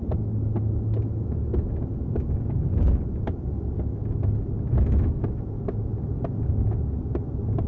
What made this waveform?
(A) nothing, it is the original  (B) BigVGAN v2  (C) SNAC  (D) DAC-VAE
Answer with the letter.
A